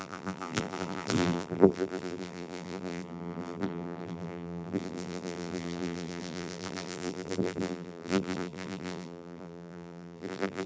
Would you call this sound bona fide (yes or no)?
no